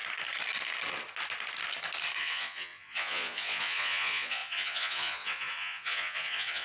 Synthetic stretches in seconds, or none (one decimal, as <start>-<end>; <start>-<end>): 2.2-6.6